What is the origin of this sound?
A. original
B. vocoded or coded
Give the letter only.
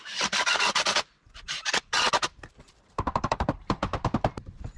B